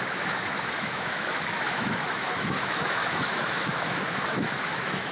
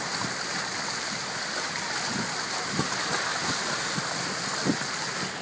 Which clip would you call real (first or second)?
second